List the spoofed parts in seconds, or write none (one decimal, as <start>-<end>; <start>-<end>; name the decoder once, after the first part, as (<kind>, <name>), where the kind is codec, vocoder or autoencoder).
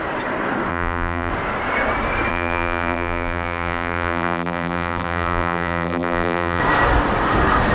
0.7-1.3 (vocoder, BigVGAN v2); 2.3-6.6